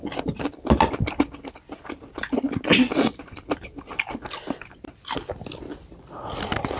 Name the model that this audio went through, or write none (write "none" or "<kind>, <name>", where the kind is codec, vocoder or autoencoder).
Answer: none